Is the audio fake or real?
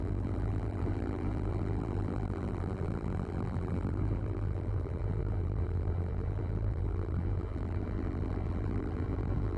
fake